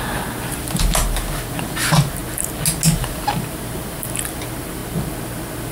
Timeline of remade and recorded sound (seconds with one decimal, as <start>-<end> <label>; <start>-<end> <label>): 0.0-2.2 remade; 2.2-3.1 recorded; 3.1-4.8 remade; 4.8-5.7 recorded

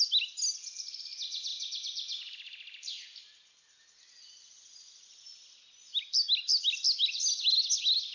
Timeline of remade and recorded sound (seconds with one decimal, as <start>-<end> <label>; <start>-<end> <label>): 0.0-1.5 recorded; 1.5-3.8 remade; 3.8-8.1 recorded